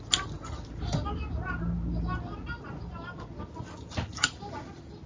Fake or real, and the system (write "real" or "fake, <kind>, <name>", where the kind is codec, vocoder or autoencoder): real